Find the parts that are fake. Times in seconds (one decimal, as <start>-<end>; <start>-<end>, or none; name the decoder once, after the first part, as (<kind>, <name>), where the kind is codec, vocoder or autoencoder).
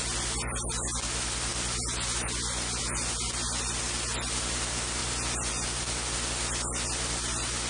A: none